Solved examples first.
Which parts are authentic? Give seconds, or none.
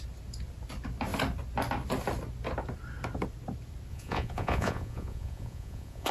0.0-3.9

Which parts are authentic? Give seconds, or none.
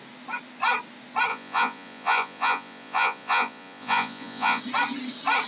0.0-1.3; 4.6-5.5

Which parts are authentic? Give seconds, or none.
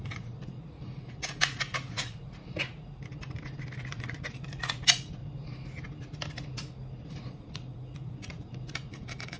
3.0-3.9; 5.2-7.1